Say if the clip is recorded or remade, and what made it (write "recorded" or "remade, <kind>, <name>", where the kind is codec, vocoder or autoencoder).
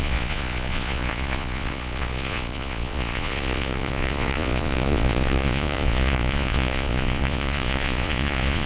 remade, vocoder, Vocos